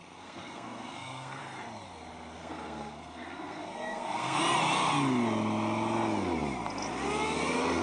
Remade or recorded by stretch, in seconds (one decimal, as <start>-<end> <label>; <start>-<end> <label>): 0.0-1.4 remade; 1.4-2.4 recorded; 2.4-4.4 remade; 4.4-7.8 recorded

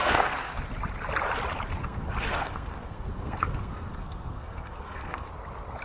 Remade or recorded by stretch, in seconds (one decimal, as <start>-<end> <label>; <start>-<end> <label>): 0.0-0.6 remade; 0.6-1.8 recorded; 1.8-5.3 remade; 5.3-5.8 recorded

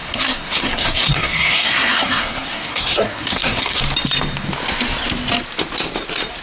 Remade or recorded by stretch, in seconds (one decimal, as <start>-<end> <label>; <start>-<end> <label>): 0.0-3.8 remade; 3.8-6.4 recorded